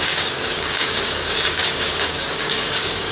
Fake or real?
fake